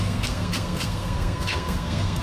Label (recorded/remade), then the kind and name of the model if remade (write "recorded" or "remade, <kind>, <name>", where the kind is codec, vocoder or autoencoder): remade, codec, SNAC